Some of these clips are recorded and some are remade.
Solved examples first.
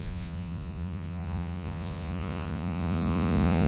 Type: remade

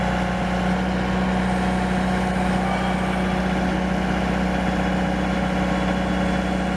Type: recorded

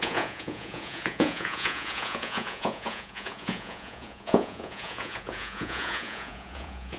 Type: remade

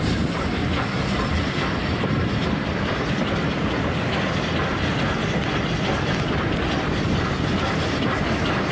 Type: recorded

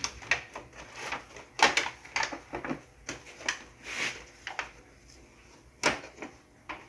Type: recorded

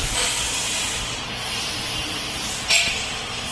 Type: recorded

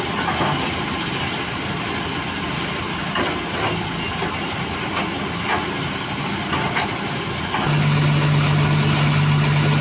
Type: recorded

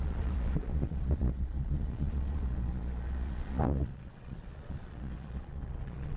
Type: remade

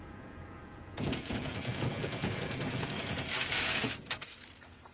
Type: remade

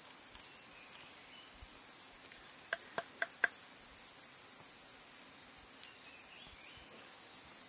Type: recorded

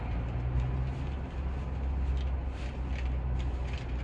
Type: recorded